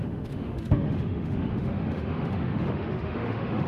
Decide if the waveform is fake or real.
fake